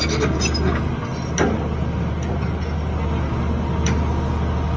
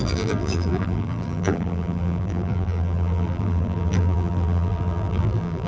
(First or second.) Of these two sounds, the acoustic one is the first